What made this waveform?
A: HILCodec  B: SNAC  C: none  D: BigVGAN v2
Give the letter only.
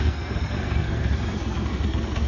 B